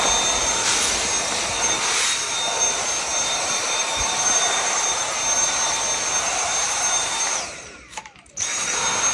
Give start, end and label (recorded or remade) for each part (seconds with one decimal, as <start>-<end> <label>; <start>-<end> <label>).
0.0-3.1 recorded; 3.1-5.0 remade; 5.0-6.3 recorded; 6.3-8.3 remade; 8.3-9.1 recorded